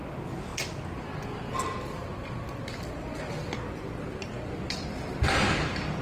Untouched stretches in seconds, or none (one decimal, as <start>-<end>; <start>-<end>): 0.0-6.0